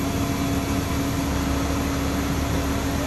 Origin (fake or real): real